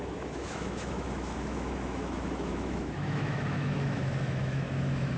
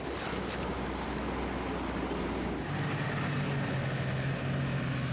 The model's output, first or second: first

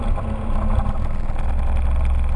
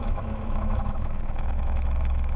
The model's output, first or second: second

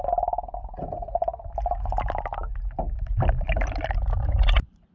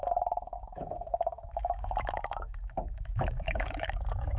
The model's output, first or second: second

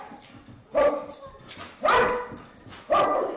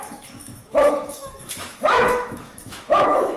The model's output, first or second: second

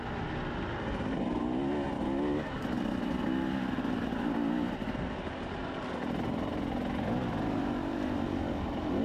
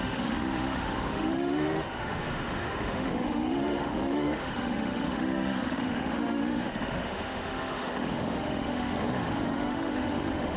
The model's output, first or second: second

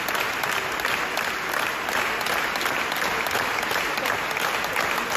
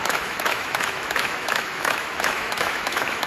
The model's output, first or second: second